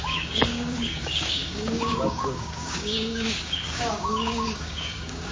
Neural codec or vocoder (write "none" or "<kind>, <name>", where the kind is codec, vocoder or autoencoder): codec, DAC